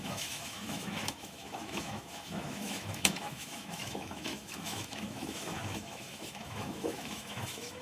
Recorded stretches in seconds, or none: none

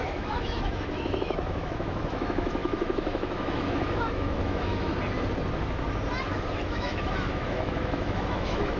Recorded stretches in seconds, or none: 4.9-6.5

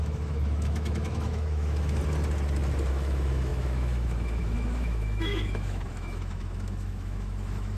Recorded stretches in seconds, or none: 2.0-2.9

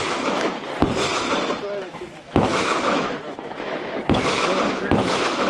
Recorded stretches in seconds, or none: 0.5-1.8

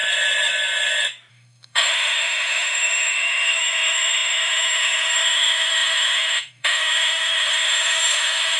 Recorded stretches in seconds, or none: 0.0-1.3

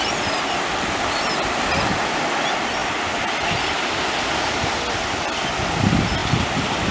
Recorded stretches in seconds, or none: 0.0-6.9

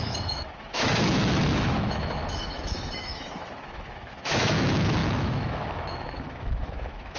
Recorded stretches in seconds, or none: none

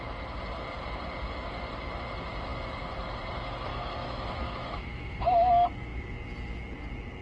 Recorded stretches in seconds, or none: 0.0-3.7; 5.5-7.2